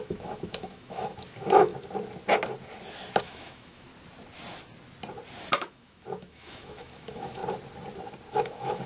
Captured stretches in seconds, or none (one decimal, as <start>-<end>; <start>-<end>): 1.7-3.2; 3.9-5.5; 7.4-8.3